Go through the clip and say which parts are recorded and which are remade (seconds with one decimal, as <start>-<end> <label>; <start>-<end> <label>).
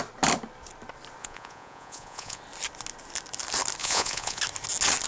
0.0-1.2 recorded; 1.2-2.4 remade; 2.4-3.8 recorded; 3.8-4.4 remade; 4.4-5.1 recorded